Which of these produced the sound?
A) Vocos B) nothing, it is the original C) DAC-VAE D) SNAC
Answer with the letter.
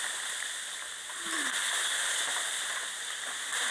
B